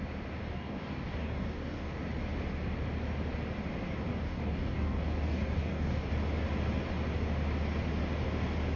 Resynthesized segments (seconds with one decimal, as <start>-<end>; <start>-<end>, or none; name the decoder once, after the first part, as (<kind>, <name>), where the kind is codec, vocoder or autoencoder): 0.4-2.0 (codec, DAC); 4.1-6.1